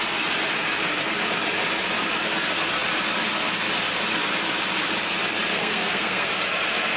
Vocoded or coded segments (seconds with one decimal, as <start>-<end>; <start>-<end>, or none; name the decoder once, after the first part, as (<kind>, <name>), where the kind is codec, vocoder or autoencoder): 5.5-6.3 (codec, SNAC)